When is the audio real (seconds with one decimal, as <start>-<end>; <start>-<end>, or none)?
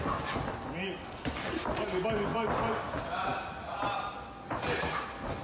0.0-5.4